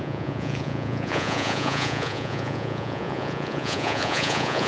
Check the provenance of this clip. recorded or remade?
remade